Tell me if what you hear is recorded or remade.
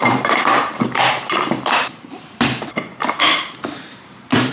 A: remade